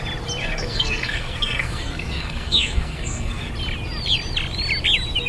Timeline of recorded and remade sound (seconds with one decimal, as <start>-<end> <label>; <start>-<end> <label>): 0.0-0.4 recorded; 0.4-3.5 remade; 3.5-5.3 recorded